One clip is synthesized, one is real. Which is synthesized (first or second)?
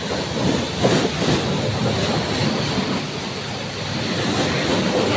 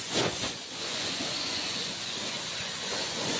second